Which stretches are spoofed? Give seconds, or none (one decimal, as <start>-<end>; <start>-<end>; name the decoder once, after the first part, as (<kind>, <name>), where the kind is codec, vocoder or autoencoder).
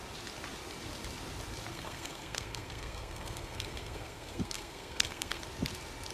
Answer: 1.7-5.4 (codec, SNAC)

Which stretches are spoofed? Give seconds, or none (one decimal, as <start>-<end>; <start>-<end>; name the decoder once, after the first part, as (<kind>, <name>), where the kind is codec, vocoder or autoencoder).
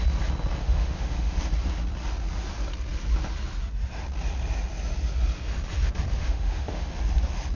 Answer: 0.6-1.4 (autoencoder, DAC-VAE); 6.2-6.9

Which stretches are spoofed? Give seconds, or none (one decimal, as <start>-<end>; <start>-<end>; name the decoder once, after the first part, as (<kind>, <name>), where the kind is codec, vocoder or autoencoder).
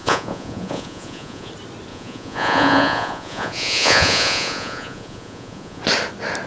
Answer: 0.0-1.5 (vocoder, Vocos); 1.9-5.8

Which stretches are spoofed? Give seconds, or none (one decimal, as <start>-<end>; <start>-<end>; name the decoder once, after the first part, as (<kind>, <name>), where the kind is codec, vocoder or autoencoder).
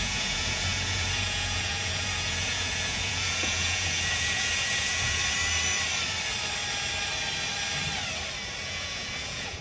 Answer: 0.0-5.2 (vocoder, Vocos); 8.6-9.6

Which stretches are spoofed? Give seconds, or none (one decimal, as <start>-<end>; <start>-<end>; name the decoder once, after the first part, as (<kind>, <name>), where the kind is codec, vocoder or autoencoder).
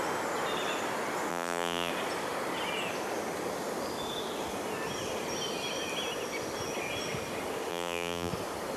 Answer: 1.3-1.9 (vocoder, BigVGAN v2); 7.7-8.3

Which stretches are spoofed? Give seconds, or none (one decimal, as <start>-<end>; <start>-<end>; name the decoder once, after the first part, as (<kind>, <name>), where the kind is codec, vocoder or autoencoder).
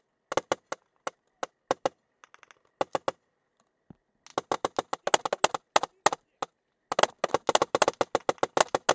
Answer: none